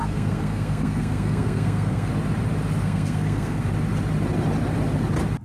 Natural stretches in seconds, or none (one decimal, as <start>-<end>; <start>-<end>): 2.1-2.8; 3.7-5.4